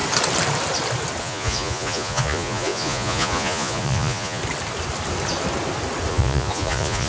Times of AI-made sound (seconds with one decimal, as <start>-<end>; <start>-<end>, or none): 1.2-4.4; 6.1-7.1